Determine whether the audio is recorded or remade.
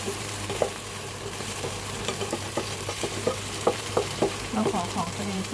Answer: remade